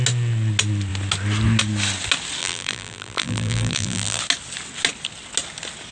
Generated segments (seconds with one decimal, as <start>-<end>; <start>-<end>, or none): 2.4-4.2